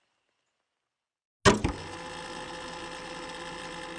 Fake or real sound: real